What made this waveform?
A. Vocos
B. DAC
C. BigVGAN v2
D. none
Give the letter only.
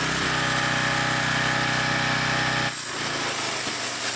D